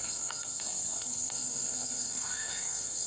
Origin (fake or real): fake